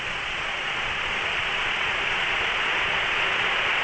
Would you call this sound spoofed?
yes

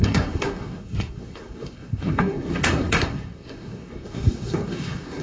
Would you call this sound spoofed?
yes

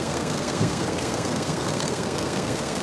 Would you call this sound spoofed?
yes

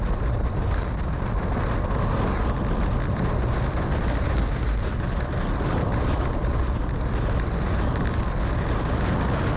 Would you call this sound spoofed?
no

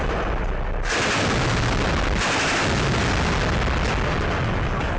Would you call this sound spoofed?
no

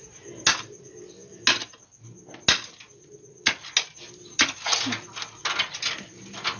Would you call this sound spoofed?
no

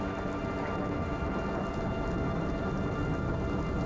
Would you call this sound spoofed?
no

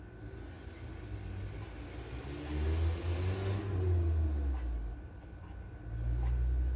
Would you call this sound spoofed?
no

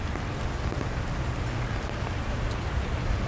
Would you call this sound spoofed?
yes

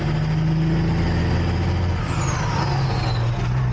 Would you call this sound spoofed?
no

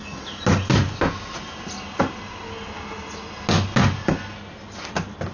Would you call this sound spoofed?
no